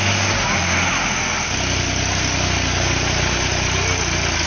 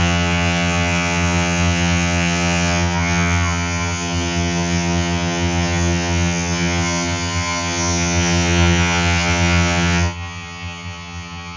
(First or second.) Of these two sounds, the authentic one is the first